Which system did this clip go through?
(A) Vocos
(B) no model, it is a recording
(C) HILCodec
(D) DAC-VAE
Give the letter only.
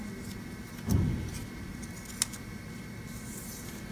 B